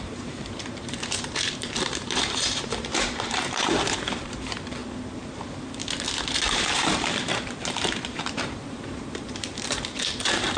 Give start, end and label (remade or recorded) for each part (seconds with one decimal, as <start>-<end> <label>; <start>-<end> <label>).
0.0-4.8 remade; 4.8-6.5 recorded; 6.5-10.6 remade